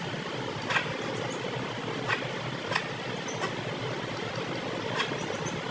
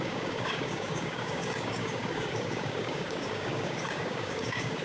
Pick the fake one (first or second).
second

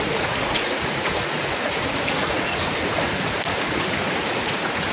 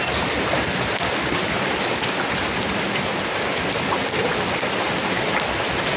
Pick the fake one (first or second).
first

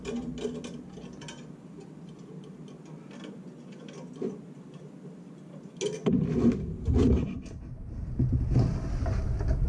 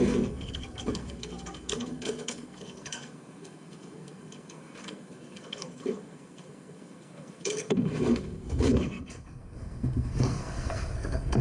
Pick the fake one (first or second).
second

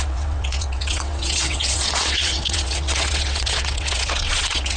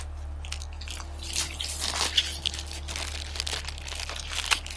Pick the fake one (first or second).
first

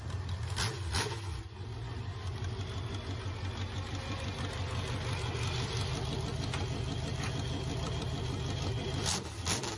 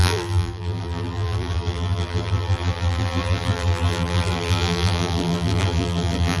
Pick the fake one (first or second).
second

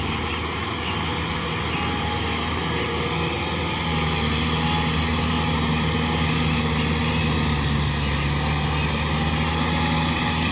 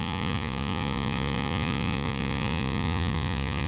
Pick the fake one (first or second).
second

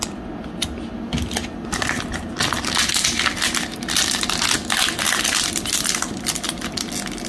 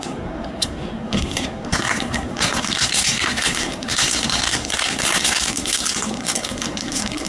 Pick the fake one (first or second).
second